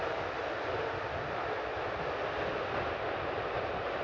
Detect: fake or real real